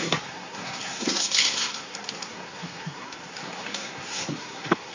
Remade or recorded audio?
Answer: remade